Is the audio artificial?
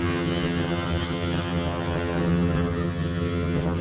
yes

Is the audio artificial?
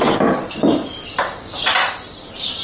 no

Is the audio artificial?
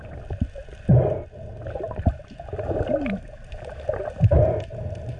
no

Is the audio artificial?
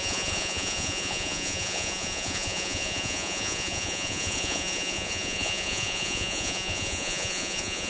yes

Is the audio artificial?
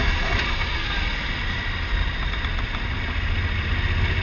no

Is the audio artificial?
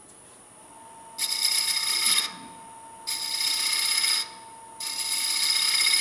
no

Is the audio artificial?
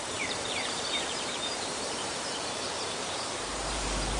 yes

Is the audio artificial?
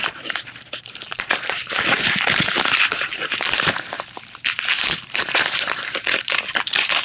yes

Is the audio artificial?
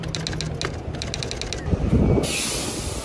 no